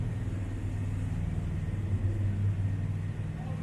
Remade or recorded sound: recorded